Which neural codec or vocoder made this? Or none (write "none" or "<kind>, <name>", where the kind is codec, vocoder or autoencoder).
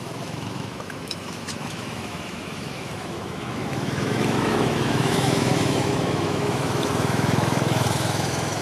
autoencoder, DAC-VAE